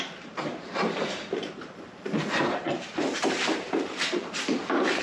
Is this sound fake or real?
fake